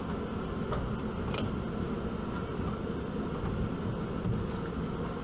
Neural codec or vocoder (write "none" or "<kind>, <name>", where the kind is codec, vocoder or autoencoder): none